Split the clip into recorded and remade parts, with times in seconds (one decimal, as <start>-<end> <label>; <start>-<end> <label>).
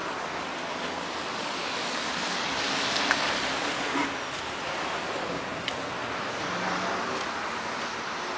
0.0-1.3 recorded; 1.3-2.9 remade; 2.9-8.4 recorded